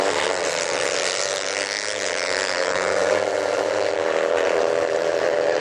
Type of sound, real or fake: fake